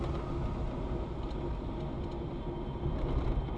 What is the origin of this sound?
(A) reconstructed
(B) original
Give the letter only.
B